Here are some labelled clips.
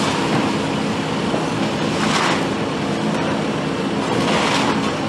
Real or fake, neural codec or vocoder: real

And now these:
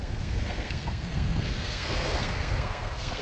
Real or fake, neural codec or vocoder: fake, codec, SNAC